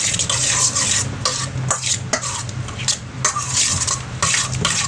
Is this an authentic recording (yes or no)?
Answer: yes